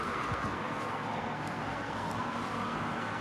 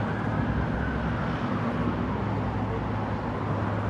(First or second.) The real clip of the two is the second